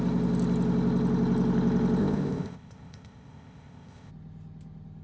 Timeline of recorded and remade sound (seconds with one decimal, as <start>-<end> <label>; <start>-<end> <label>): 0.0-2.0 recorded; 2.0-4.1 remade; 4.1-5.0 recorded